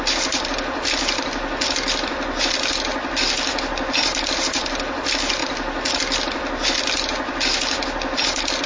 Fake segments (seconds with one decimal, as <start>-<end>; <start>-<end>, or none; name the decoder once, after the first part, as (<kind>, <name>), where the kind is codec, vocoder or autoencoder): none